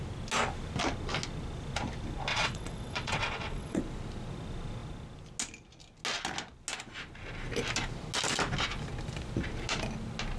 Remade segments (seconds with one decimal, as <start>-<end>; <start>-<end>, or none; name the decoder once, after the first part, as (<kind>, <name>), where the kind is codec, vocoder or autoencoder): 2.3-3.8 (vocoder, WaveNeXt)